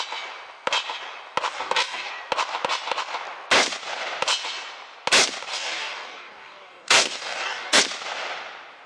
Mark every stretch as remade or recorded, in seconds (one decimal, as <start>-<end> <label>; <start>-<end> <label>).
0.0-1.5 recorded; 1.5-2.1 remade; 2.1-5.5 recorded; 5.5-7.8 remade; 7.8-8.9 recorded